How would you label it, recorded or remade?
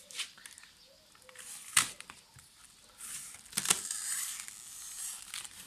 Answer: recorded